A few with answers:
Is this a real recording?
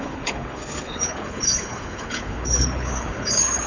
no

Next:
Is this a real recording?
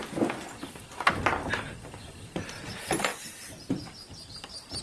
yes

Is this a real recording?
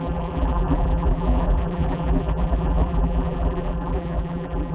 no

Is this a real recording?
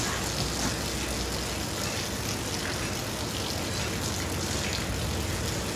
yes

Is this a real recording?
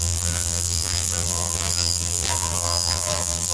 no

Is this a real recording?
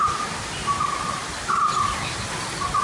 yes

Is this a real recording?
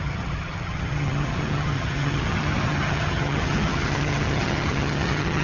no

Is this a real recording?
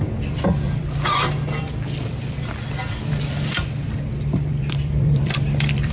no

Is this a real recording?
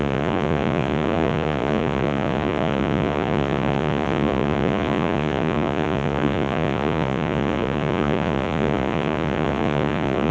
no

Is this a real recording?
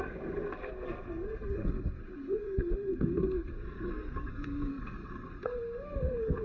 no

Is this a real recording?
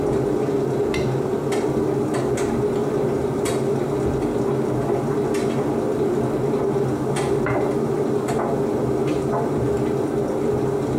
yes